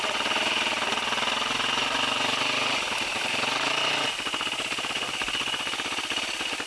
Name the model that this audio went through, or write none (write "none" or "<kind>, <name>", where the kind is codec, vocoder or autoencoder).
none